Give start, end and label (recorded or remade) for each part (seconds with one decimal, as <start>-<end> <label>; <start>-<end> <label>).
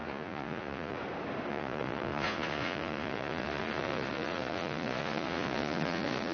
0.0-1.0 remade; 1.0-1.5 recorded; 1.5-6.3 remade